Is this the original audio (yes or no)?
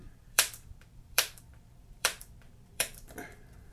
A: no